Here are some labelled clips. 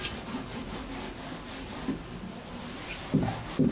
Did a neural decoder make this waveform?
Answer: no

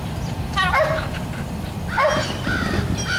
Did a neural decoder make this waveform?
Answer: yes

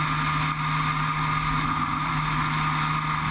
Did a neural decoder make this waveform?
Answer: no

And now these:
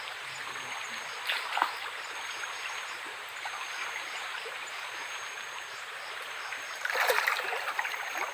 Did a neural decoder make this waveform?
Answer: yes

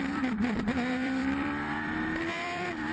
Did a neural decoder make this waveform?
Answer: yes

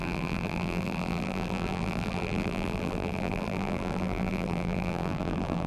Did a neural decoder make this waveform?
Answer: yes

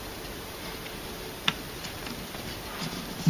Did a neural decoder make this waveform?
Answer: yes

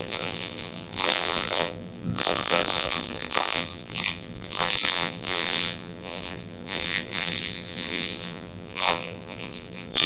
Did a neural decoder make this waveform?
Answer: yes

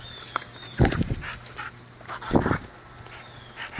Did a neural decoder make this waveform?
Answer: no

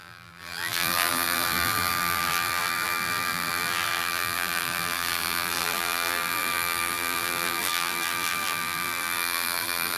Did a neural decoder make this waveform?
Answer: yes